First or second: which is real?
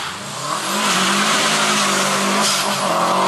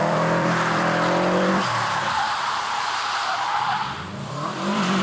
first